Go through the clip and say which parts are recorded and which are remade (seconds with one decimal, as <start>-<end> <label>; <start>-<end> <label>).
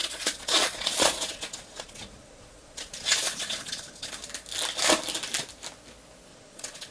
0.0-4.1 remade; 4.1-6.3 recorded; 6.3-6.9 remade